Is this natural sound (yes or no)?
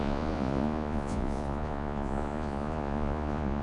no